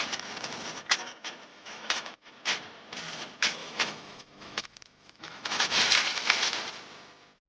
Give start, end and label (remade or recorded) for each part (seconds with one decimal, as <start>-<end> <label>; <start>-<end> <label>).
0.0-1.5 recorded; 1.5-2.3 remade; 2.3-3.6 recorded; 3.6-5.8 remade; 5.8-7.5 recorded

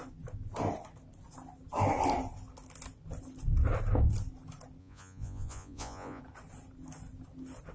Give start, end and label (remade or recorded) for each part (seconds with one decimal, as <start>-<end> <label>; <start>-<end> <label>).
0.0-4.8 recorded; 4.8-6.2 remade; 6.2-7.7 recorded

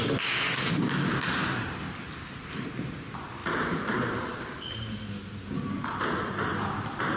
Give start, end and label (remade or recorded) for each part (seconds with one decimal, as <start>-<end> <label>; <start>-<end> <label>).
0.0-3.4 recorded; 3.4-5.2 remade; 5.2-7.2 recorded

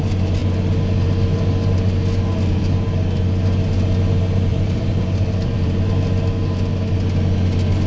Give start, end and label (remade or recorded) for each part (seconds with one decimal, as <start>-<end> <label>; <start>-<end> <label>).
0.0-4.5 recorded; 4.5-5.9 remade; 5.9-7.9 recorded

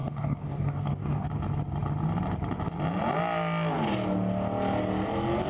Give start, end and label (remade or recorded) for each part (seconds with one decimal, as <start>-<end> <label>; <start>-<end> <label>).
0.0-1.3 remade; 1.3-5.5 recorded

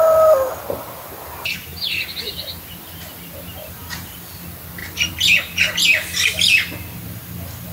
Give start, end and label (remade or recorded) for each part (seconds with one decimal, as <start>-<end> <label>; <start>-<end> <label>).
0.0-7.7 recorded

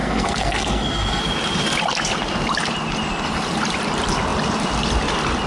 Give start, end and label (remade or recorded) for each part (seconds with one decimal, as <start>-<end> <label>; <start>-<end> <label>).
0.0-1.2 remade; 1.2-5.5 recorded